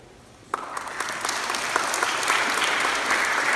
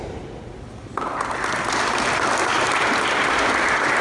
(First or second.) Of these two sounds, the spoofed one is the second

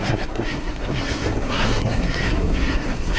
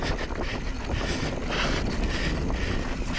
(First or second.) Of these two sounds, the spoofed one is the first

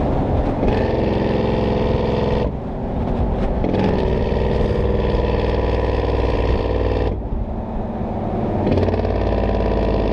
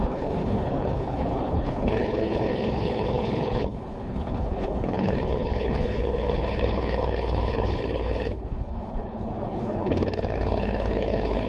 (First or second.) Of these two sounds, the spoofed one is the second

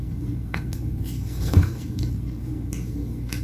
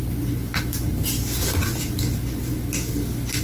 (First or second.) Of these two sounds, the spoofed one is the first